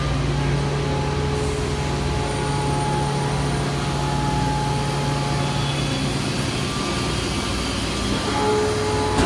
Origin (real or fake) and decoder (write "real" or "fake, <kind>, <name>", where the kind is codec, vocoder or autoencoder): real